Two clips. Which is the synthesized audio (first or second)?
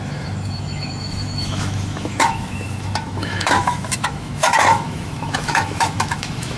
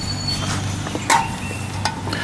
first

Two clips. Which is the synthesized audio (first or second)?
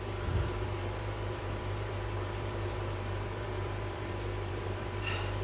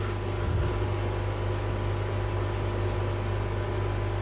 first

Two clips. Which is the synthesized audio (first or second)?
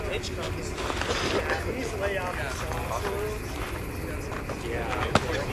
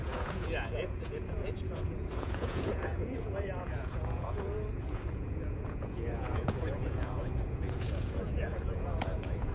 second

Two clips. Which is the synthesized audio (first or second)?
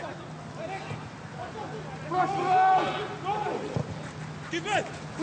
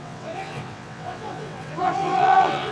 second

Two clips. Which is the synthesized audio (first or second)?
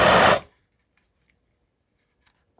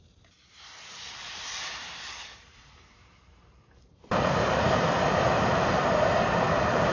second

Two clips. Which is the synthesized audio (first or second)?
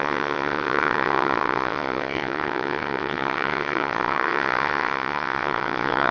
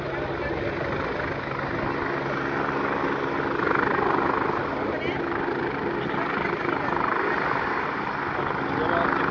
first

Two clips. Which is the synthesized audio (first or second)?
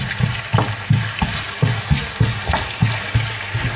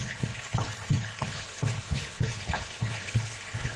second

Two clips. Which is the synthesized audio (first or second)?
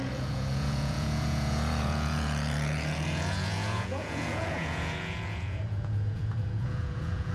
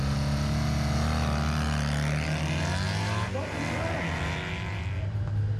first